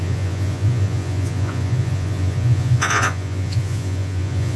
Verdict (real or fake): fake